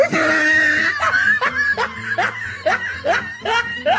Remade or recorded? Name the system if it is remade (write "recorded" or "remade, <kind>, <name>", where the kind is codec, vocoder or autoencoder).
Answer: recorded